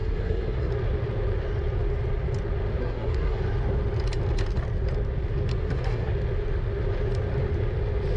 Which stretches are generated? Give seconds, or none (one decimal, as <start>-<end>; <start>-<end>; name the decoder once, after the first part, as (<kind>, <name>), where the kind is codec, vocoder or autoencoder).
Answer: 0.0-0.7 (codec, SNAC); 2.8-3.4; 5.6-6.1